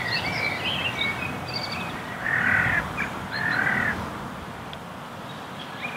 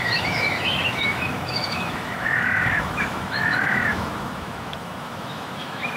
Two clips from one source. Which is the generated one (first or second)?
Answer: second